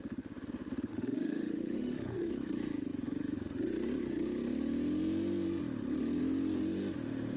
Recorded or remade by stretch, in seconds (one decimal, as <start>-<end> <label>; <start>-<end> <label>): 0.0-0.9 recorded; 0.9-2.3 remade; 2.3-7.4 recorded